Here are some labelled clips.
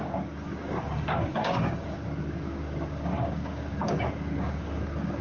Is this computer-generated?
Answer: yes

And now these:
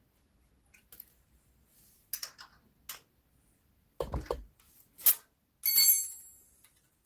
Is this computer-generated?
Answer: no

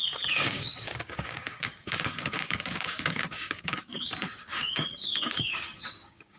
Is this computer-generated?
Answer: yes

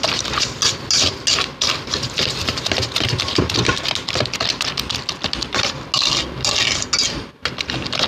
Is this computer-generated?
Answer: no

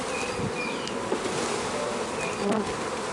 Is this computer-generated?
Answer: no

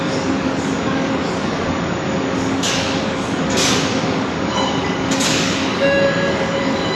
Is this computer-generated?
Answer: yes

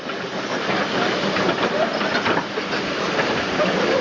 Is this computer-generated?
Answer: no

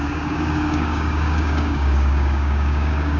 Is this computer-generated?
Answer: yes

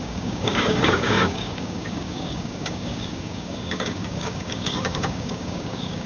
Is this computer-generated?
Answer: yes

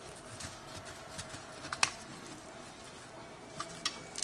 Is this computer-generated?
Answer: no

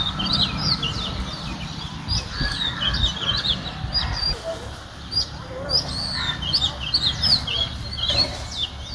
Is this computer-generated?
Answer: no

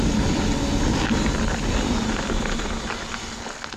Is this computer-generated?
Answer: no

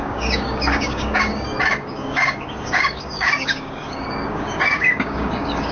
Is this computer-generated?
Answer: yes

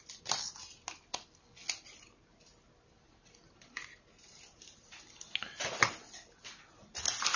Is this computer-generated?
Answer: no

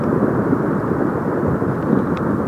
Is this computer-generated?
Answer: no